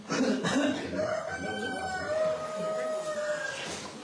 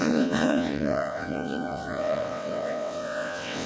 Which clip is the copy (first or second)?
second